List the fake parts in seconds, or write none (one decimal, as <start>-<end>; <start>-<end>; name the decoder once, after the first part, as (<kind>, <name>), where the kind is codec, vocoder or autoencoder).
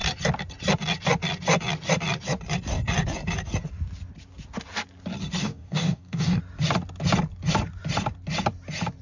5.4-6.4 (codec, DAC)